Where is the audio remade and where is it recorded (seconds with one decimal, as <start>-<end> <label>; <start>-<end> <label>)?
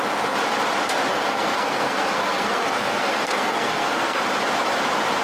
0.0-1.1 recorded; 1.1-4.2 remade; 4.2-5.2 recorded